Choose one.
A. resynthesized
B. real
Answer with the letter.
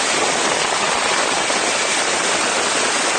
B